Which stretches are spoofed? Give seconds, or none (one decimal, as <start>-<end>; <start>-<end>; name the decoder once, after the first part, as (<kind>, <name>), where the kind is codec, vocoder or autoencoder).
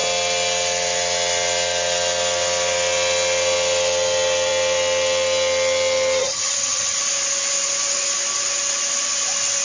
6.2-7.0 (vocoder, HiFi-GAN)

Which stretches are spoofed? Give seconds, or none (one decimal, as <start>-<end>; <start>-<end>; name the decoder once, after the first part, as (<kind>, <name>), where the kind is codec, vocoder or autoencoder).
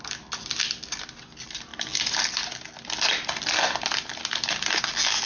none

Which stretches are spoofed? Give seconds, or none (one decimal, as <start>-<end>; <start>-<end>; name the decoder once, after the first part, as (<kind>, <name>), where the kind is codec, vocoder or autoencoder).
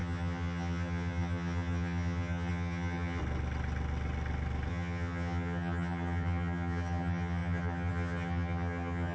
0.0-3.2 (vocoder, HiFi-GAN); 4.7-9.1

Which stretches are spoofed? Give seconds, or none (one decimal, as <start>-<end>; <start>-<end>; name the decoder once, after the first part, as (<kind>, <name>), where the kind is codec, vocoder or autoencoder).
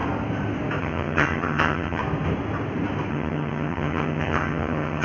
0.8-2.0 (vocoder, HiFi-GAN); 3.1-5.0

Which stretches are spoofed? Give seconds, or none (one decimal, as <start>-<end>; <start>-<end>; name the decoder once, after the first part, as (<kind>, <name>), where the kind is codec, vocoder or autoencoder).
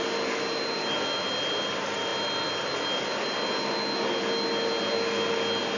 none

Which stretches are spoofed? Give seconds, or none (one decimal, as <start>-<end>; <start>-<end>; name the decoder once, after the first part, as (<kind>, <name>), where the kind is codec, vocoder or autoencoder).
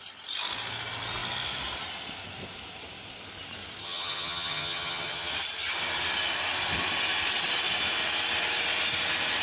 3.8-5.3 (vocoder, HiFi-GAN)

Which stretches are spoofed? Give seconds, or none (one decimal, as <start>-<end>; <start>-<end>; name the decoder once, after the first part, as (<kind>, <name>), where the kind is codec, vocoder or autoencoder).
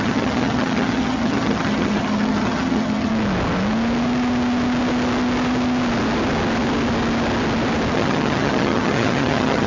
0.0-3.1 (vocoder, HiFi-GAN); 7.9-9.7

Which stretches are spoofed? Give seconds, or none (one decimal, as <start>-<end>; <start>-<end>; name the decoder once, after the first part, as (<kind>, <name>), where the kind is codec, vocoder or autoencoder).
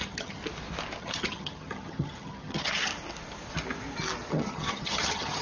0.0-0.4 (vocoder, HiFi-GAN); 1.0-2.9; 4.3-5.4